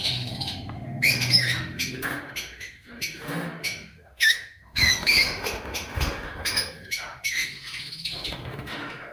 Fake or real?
fake